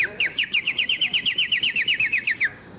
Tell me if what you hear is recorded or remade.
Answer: remade